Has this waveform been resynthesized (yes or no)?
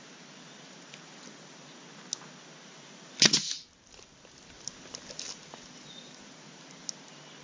no